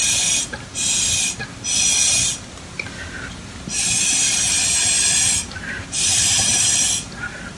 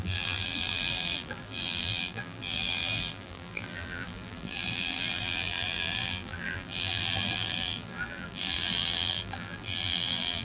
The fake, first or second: second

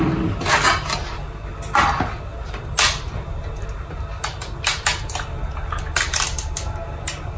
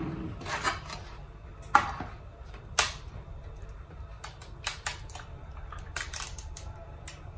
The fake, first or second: second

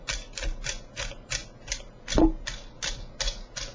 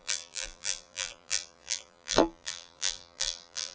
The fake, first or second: second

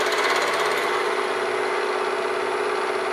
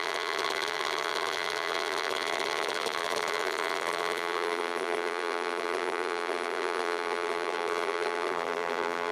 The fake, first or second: second